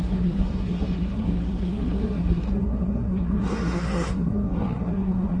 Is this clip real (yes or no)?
no